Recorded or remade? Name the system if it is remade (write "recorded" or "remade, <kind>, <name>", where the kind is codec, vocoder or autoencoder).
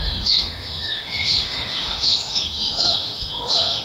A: remade, autoencoder, DAC-VAE